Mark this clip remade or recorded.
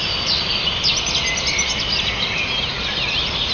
recorded